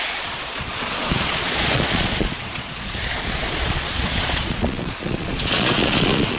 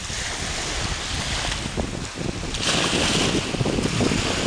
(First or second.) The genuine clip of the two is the second